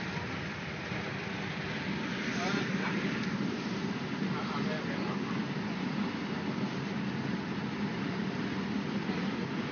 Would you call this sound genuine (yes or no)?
no